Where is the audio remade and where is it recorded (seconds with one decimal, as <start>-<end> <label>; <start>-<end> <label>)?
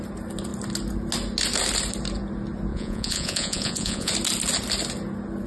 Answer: 0.0-2.7 recorded; 2.7-4.1 remade; 4.1-5.5 recorded